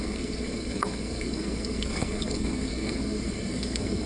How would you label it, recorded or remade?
remade